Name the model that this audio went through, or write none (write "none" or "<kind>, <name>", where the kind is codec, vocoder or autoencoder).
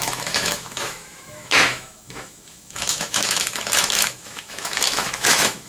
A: autoencoder, DAC-VAE